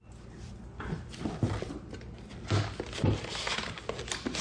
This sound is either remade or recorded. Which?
recorded